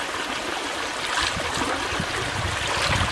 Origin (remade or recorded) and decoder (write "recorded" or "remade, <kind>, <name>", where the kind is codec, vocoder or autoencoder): recorded